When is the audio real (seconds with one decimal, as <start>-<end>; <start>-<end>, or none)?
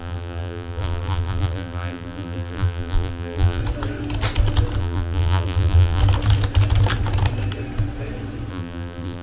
3.6-4.8; 6.0-8.5